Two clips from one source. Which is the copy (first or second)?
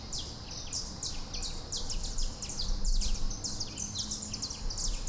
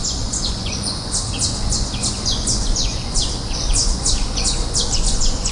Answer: second